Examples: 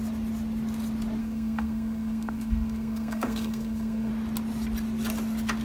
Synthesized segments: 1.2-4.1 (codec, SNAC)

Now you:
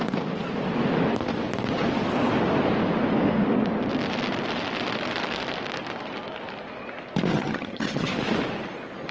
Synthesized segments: 7.3-8.1 (vocoder, HiFi-GAN)

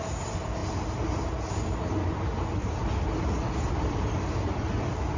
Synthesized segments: 0.0-0.6 (vocoder, BigVGAN v2); 3.7-5.2

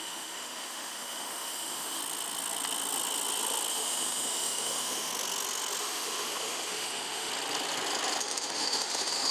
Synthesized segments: 0.0-2.0 (autoencoder, DAC-VAE); 3.7-5.1; 5.8-7.3; 8.2-9.3

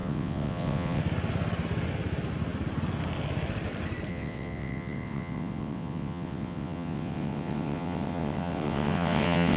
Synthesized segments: 0.0-1.0 (vocoder, WaveNeXt); 4.1-9.6